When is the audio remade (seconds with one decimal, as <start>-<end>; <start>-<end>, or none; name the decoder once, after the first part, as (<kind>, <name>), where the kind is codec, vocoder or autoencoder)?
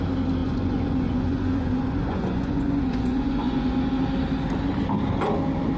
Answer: 0.4-3.9 (vocoder, Vocos)